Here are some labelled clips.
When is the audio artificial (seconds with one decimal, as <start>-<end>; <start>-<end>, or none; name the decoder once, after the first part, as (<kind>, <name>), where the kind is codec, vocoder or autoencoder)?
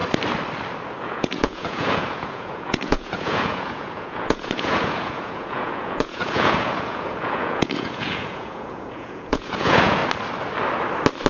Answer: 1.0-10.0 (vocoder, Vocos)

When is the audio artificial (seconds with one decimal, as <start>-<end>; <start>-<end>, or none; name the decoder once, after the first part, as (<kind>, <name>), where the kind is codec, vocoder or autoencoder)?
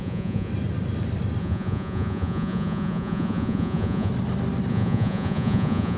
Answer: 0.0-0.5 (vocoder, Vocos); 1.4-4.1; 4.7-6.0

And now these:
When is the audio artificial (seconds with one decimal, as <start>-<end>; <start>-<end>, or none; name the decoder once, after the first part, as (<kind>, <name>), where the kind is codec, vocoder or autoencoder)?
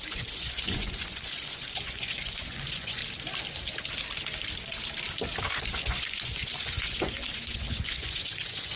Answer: 0.0-3.0 (vocoder, Vocos); 5.6-8.8